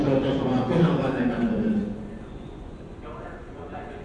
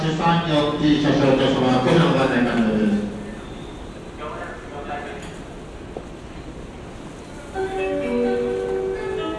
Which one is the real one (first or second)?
second